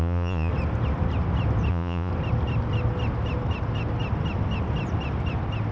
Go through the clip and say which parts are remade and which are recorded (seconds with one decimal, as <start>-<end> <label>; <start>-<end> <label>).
0.0-0.5 remade; 0.5-1.7 recorded; 1.7-2.1 remade; 2.1-5.7 recorded